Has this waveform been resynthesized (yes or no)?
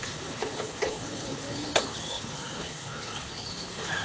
yes